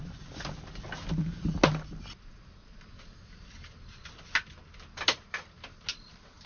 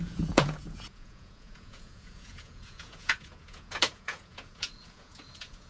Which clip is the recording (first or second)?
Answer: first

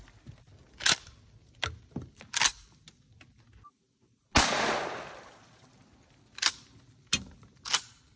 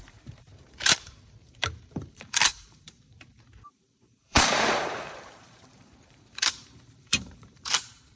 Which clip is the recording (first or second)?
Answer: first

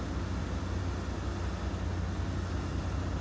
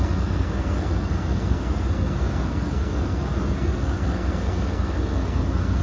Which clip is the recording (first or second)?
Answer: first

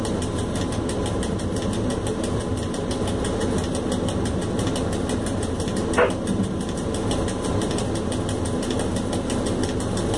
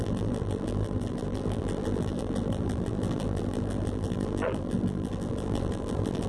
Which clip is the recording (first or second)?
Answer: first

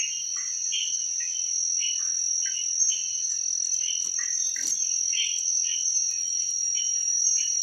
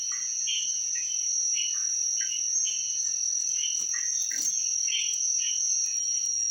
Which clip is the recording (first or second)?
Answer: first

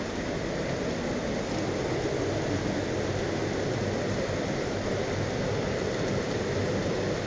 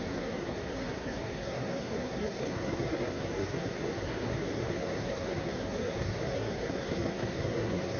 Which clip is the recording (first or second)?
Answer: first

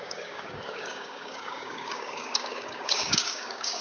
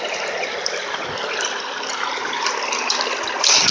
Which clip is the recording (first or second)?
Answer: second